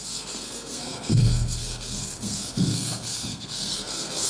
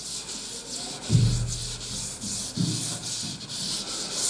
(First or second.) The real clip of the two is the second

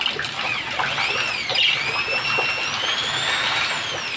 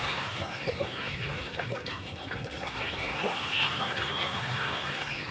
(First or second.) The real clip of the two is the first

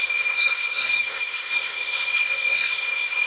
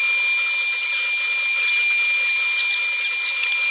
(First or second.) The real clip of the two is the second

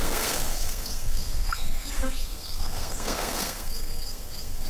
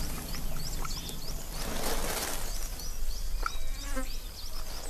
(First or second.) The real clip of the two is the second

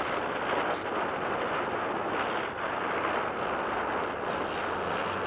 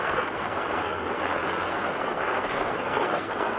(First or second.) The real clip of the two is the first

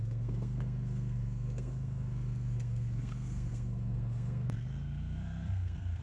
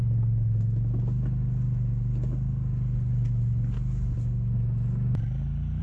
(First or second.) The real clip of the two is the second